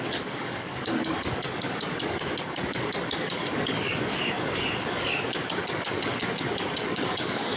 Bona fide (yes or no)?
no